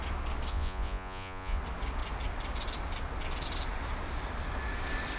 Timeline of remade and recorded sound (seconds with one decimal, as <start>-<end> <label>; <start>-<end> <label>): 0.0-0.5 recorded; 0.5-1.6 remade; 1.6-5.2 recorded